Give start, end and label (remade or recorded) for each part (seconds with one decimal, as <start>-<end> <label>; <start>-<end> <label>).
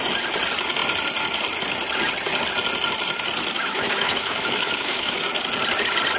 0.0-3.6 recorded; 3.6-5.2 remade; 5.2-6.2 recorded